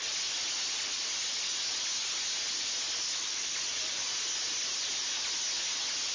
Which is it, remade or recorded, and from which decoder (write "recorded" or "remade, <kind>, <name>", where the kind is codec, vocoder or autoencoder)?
recorded